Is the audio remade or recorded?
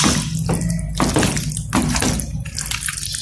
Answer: recorded